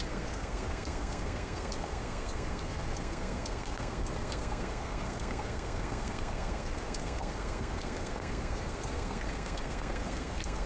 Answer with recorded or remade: remade